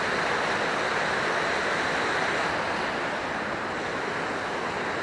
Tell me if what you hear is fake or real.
real